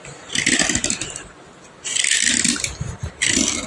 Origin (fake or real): fake